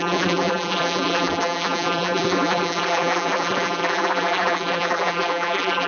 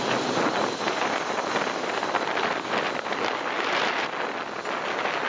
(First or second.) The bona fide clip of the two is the second